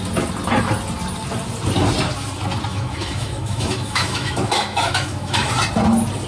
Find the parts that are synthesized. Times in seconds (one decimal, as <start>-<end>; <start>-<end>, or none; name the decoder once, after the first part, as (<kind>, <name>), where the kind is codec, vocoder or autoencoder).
2.7-5.5 (autoencoder, DAC-VAE)